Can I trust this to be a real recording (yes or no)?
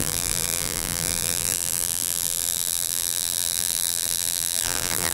no